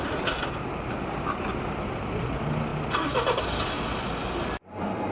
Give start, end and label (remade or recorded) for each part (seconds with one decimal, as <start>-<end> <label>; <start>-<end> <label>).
0.0-5.1 recorded